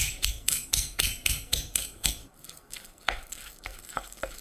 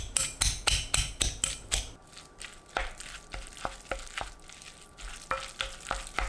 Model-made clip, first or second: first